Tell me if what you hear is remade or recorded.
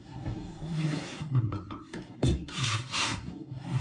remade